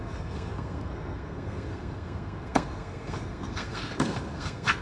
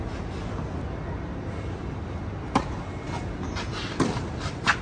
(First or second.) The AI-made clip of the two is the first